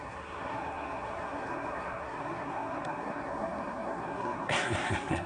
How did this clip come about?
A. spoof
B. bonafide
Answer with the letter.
A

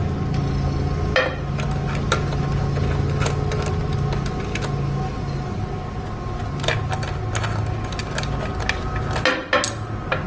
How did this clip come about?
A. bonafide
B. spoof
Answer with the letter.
A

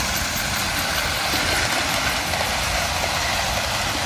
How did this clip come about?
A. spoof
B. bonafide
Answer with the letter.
B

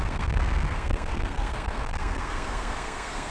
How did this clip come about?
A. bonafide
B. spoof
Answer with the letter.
B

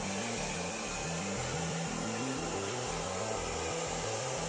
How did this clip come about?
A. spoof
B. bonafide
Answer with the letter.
B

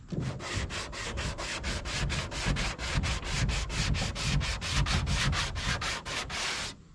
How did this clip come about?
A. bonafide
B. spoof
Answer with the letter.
A